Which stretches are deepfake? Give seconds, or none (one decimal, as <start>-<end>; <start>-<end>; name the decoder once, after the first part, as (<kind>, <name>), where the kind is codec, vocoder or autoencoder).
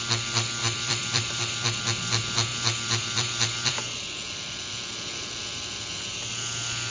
0.6-1.8 (vocoder, BigVGAN v2); 2.5-3.7